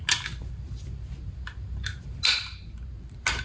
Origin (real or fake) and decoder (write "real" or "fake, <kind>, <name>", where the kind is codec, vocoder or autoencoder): real